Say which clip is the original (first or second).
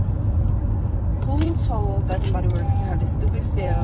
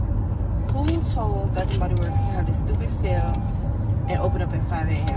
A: second